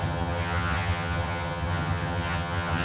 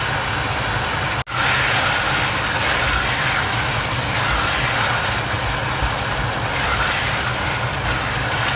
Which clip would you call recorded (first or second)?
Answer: second